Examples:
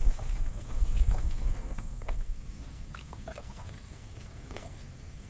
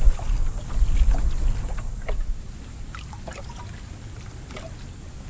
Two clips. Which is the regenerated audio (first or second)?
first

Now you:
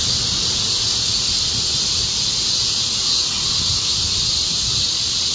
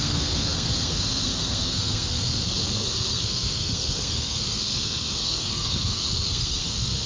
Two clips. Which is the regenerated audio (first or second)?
second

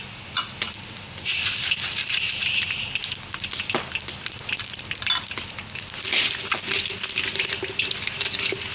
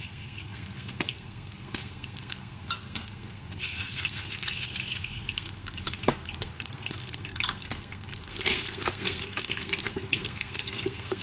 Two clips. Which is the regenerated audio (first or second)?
second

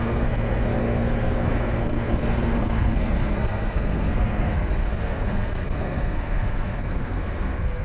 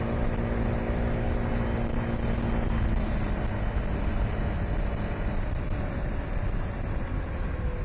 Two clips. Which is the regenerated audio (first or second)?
first